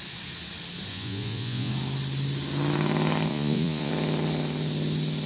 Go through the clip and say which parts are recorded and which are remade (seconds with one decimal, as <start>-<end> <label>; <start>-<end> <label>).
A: 0.0-0.9 recorded; 0.9-1.7 remade; 1.7-3.3 recorded; 3.3-3.9 remade; 3.9-5.3 recorded